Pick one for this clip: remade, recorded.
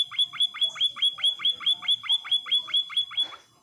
recorded